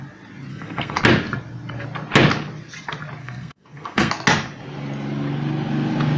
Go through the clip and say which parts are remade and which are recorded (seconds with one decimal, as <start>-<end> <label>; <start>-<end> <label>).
0.0-0.5 recorded; 0.5-1.0 remade; 1.0-3.2 recorded; 3.2-4.1 remade; 4.1-6.2 recorded